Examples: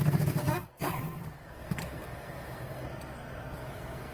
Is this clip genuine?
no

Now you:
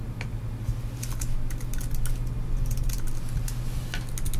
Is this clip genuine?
yes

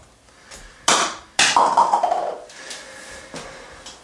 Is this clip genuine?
yes